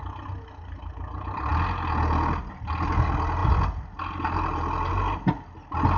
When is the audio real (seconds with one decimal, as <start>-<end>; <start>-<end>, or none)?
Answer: 0.0-6.0